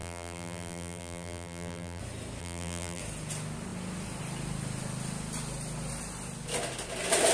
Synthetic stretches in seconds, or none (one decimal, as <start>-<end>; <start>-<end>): 0.0-2.0; 2.4-3.0